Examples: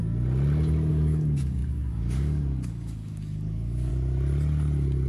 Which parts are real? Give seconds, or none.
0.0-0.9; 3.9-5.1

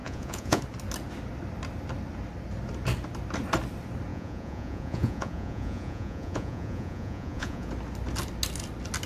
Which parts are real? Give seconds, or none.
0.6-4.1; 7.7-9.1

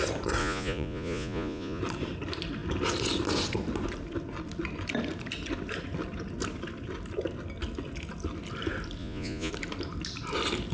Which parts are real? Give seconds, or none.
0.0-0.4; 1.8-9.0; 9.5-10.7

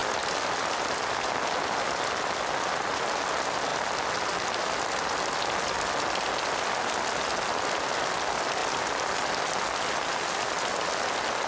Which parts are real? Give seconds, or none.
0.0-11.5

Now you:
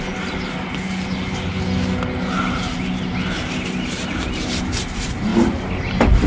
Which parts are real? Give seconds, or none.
0.0-6.3